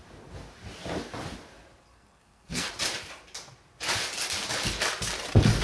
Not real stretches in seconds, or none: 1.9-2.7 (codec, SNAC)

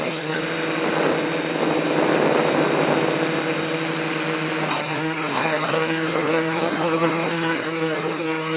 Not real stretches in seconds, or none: 0.0-0.4 (codec, SNAC); 4.7-8.6

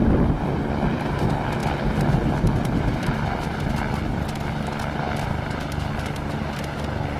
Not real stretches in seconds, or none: none